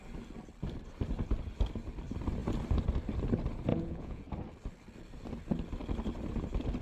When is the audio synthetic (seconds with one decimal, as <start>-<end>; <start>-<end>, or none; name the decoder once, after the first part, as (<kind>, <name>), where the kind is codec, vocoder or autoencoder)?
3.7-4.2 (vocoder, Vocos)